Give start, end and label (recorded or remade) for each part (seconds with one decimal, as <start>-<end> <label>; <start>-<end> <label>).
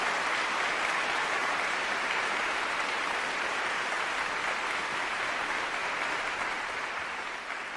0.0-1.4 recorded; 1.4-2.7 remade; 2.7-5.8 recorded; 5.8-7.3 remade; 7.3-7.8 recorded